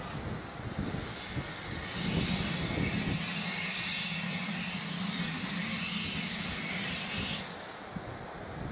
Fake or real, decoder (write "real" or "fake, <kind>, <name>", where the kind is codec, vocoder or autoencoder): real